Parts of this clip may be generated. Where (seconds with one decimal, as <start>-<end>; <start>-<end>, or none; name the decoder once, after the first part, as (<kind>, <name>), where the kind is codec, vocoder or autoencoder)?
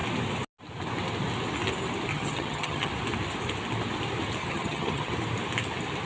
2.1-2.9 (vocoder, HiFi-GAN); 4.4-5.1